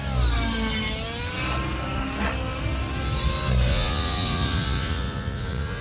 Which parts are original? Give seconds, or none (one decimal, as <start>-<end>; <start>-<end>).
0.0-3.7